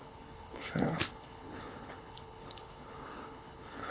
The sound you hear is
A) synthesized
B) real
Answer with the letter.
A